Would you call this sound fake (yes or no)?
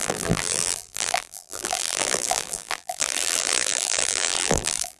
yes